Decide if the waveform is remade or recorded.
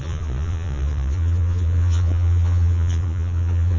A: remade